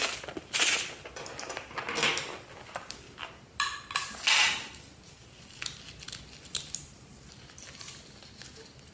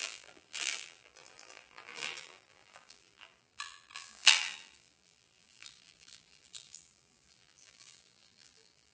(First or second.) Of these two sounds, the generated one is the second